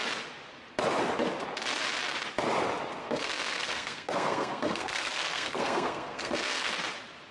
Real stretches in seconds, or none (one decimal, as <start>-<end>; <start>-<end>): 0.0-3.0; 6.7-7.3